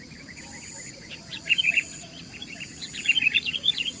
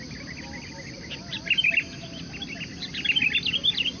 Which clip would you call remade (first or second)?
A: first